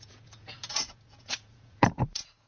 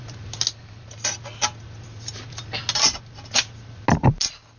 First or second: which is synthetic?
first